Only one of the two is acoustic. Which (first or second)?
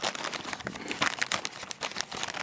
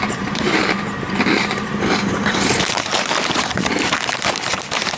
first